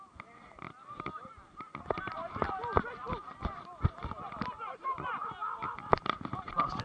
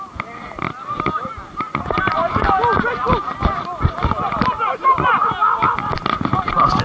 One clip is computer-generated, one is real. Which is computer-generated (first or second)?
first